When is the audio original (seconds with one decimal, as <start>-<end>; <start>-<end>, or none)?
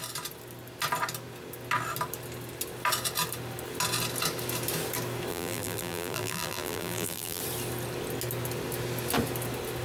0.0-5.3; 7.4-9.8